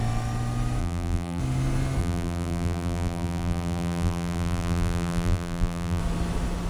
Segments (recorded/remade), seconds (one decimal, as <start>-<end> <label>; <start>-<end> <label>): 0.0-0.8 recorded; 0.8-1.4 remade; 1.4-2.0 recorded; 2.0-6.0 remade; 6.0-6.7 recorded